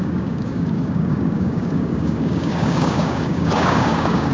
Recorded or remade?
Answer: remade